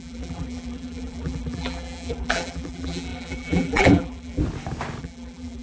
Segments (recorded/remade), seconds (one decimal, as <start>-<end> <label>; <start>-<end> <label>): 0.0-4.4 remade; 4.4-5.0 recorded; 5.0-5.6 remade